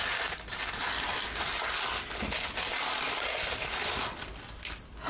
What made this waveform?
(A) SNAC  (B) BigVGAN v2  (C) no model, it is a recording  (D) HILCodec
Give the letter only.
C